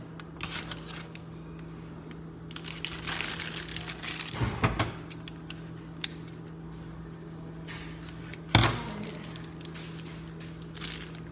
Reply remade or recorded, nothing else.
recorded